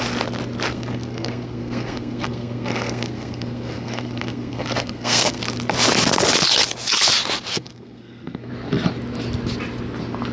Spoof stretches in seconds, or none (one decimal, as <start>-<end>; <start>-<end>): 0.7-5.4; 7.5-8.5